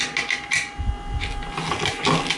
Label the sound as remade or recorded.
recorded